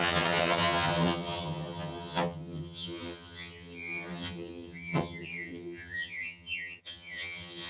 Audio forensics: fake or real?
fake